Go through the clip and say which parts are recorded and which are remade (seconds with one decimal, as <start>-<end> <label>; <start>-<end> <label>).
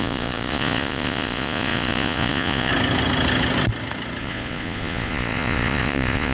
0.0-2.7 remade; 2.7-4.2 recorded; 4.2-6.3 remade